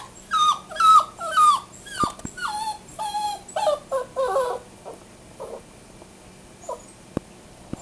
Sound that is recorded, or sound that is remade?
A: recorded